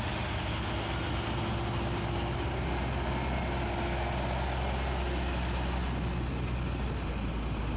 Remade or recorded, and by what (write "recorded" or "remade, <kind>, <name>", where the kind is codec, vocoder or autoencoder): recorded